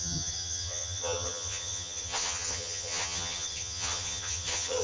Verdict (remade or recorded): remade